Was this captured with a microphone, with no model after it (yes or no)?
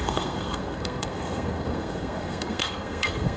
no